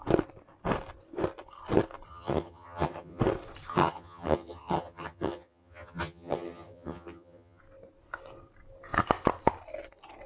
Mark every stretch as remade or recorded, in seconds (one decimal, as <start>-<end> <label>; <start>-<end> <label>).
0.0-2.1 recorded; 2.1-3.2 remade; 3.2-3.7 recorded; 3.7-7.6 remade; 7.6-10.3 recorded